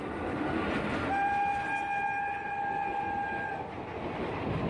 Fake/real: real